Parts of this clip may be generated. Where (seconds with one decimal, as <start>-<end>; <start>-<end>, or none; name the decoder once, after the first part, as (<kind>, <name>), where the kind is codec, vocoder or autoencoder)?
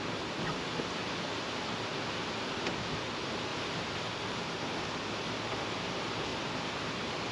3.5-4.9 (vocoder, BigVGAN v2); 6.3-7.3